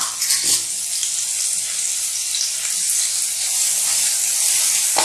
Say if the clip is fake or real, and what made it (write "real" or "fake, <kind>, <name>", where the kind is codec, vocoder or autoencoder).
real